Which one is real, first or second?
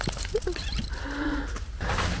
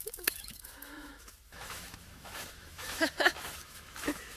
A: first